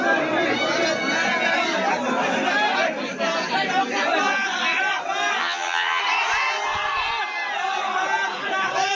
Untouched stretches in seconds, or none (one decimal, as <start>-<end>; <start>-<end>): 0.0-5.4; 6.0-8.9